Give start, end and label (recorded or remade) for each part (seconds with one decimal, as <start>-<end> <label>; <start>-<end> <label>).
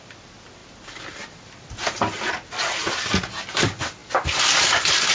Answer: 0.0-5.1 recorded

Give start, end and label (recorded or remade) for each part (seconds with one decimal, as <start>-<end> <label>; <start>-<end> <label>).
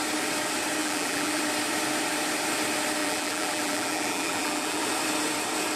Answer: 0.0-0.8 recorded; 0.8-1.4 remade; 1.4-3.0 recorded; 3.0-4.8 remade; 4.8-5.8 recorded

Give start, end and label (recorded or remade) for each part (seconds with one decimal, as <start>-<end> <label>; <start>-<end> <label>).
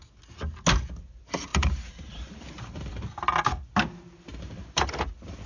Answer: 0.0-1.5 recorded; 1.5-2.9 remade; 2.9-4.3 recorded; 4.3-5.1 remade; 5.1-5.5 recorded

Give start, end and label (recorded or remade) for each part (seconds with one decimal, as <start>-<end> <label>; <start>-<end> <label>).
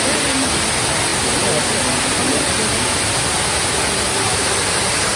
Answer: 0.0-5.2 recorded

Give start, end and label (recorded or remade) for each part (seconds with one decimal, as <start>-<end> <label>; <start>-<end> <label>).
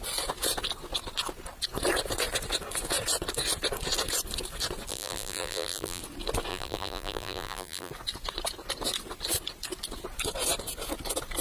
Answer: 0.0-4.9 recorded; 4.9-6.0 remade; 6.0-6.5 recorded; 6.5-7.9 remade; 7.9-11.4 recorded